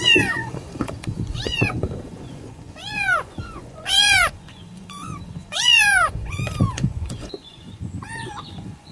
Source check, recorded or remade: remade